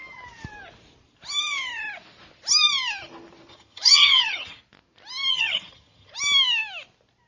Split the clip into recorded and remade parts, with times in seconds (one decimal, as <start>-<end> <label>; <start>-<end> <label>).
0.0-3.5 recorded; 3.5-4.6 remade; 4.6-5.3 recorded; 5.3-6.1 remade; 6.1-7.3 recorded